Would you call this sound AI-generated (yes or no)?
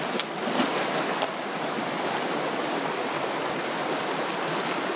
no